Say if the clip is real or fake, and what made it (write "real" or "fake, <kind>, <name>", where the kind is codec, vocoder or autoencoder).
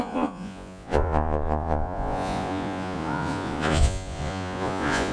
fake, vocoder, Vocos